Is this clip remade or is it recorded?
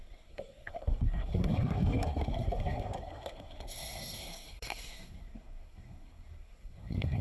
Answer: remade